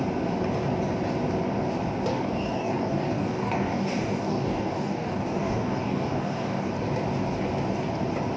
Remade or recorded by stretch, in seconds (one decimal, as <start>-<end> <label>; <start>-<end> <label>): 0.0-2.1 recorded; 2.1-6.7 remade; 6.7-8.4 recorded